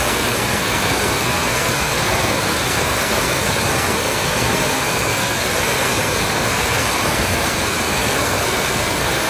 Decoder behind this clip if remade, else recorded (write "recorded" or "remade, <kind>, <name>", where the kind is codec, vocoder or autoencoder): remade, codec, SNAC